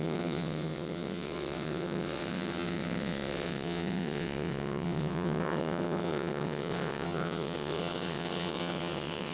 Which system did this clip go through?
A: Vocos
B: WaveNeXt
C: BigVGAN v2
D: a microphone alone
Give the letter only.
B